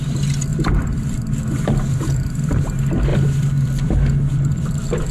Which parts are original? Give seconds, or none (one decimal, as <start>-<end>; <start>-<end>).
0.0-0.5; 2.6-3.1